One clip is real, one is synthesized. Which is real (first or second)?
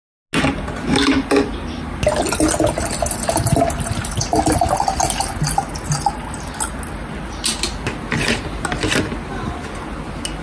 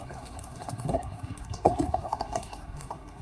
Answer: first